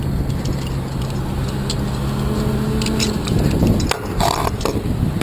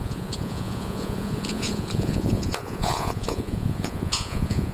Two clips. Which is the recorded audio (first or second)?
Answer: first